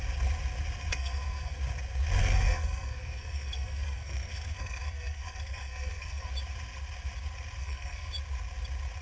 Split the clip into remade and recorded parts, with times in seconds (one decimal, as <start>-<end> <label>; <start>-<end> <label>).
0.0-0.9 recorded; 0.9-1.6 remade; 1.6-2.2 recorded; 2.2-6.3 remade; 6.3-7.6 recorded; 7.6-8.1 remade; 8.1-9.0 recorded